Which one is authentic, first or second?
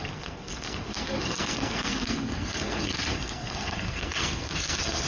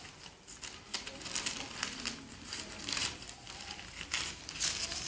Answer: second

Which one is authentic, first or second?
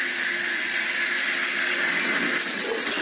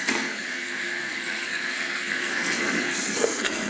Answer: first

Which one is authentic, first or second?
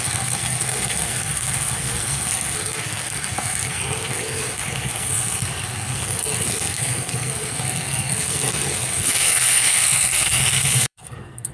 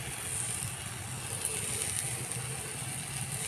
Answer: second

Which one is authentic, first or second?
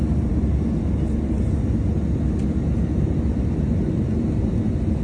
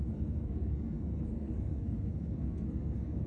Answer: first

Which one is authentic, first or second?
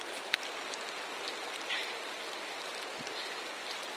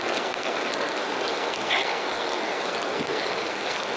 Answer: first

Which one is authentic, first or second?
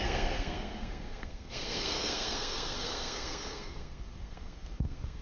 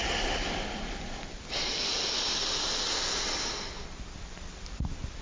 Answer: second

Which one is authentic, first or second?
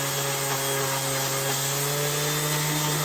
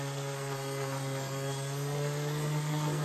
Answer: first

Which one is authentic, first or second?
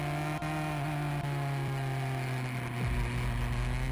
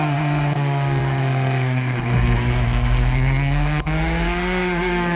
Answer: first